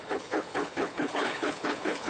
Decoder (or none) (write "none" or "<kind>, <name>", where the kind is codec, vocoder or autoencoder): codec, HILCodec